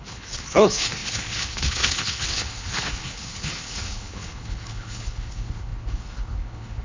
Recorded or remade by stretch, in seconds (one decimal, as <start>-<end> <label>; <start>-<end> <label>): 0.0-6.8 remade

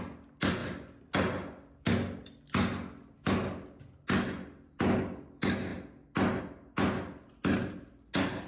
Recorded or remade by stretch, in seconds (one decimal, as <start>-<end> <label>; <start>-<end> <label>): 0.0-8.5 recorded

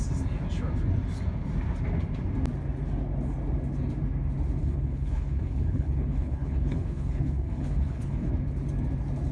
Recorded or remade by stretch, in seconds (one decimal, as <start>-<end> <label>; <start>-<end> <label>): 0.0-4.6 recorded; 4.6-8.3 remade; 8.3-9.3 recorded

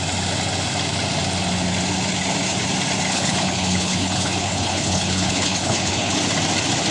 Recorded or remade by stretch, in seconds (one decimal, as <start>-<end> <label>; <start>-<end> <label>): 0.0-3.1 recorded; 3.1-6.1 remade; 6.1-6.9 recorded

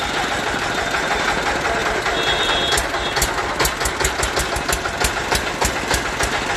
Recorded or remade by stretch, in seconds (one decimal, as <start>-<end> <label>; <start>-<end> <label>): 0.0-6.6 recorded